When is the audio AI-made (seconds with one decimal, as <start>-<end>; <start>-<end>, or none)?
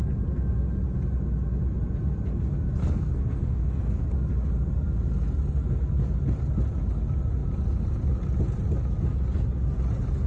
2.8-4.0